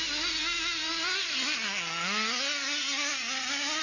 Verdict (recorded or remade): recorded